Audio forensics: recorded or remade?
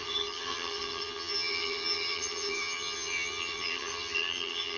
remade